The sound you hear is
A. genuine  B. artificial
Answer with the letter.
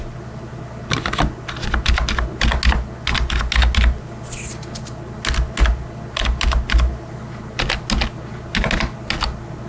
A